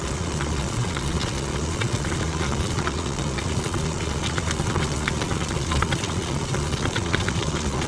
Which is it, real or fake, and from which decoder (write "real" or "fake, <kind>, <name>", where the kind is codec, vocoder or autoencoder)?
fake, vocoder, Vocos